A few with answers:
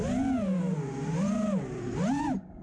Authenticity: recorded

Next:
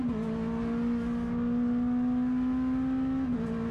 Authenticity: recorded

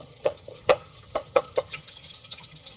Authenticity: remade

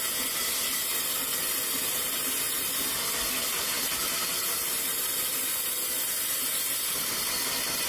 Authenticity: recorded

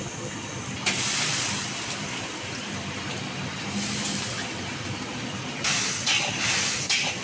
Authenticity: remade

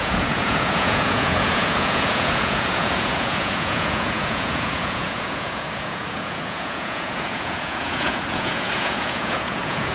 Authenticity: remade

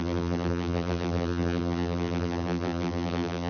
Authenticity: remade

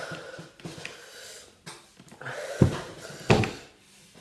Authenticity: recorded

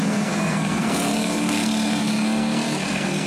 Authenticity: remade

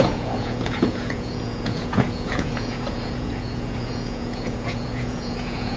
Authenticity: remade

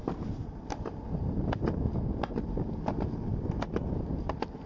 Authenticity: recorded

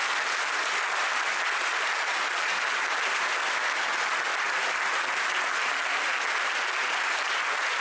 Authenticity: recorded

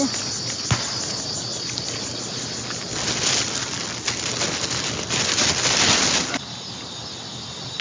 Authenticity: recorded